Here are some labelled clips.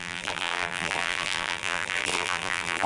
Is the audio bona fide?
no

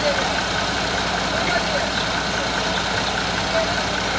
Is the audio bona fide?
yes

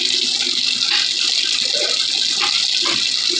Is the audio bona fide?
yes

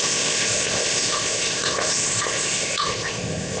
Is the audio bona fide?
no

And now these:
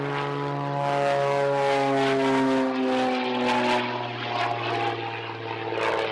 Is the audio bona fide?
yes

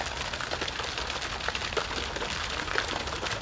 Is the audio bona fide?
yes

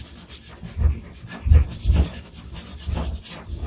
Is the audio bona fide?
no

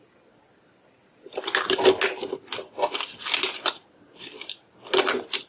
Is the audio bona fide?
yes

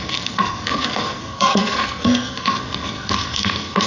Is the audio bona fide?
no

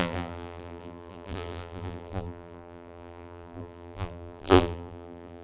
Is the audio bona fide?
no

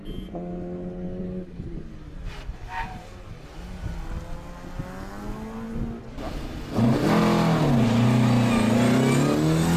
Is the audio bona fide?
yes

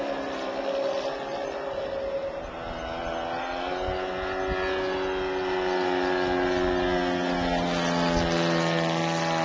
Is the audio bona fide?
yes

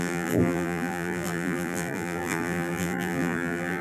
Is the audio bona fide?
no